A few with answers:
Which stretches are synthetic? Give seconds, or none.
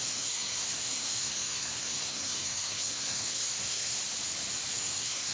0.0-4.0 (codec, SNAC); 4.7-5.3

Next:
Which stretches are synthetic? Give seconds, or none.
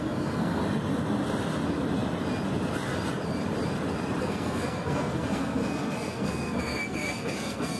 0.0-0.6 (codec, SNAC); 4.2-7.8